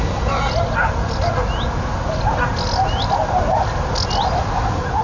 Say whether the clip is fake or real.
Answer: real